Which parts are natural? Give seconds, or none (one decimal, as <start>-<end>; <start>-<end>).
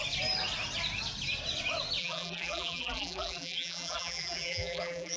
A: 0.0-2.0